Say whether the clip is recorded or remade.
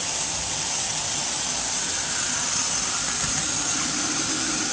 recorded